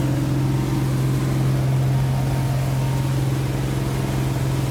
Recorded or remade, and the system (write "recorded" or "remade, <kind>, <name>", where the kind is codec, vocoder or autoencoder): recorded